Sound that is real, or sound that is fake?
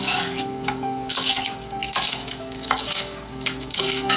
fake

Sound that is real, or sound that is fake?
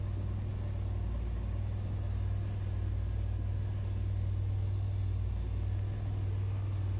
real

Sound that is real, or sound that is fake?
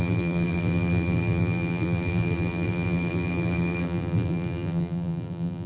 fake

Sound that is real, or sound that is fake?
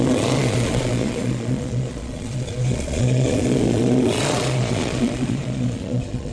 fake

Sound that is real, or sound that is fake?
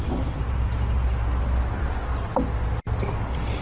real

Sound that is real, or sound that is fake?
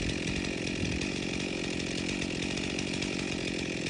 real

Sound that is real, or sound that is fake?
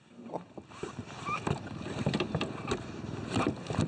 real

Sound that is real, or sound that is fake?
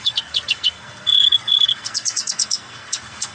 fake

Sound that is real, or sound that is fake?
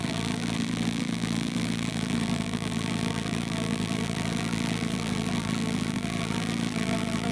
fake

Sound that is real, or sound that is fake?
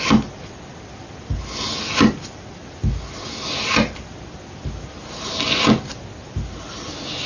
real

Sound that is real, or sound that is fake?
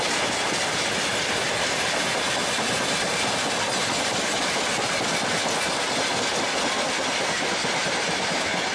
real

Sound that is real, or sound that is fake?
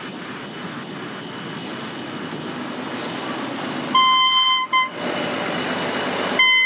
real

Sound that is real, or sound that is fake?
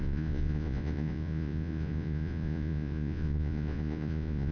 fake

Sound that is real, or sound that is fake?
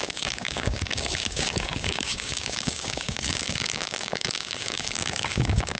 fake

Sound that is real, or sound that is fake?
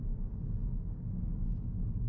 fake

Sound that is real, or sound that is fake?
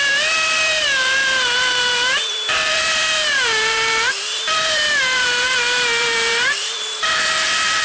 fake